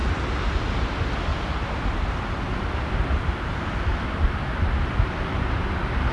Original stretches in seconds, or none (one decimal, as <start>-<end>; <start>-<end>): 0.6-1.3; 2.2-6.1